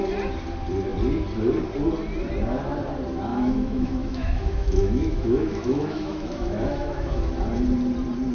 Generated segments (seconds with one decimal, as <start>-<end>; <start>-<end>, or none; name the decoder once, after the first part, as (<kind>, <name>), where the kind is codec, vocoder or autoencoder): 3.3-7.3 (autoencoder, DAC-VAE)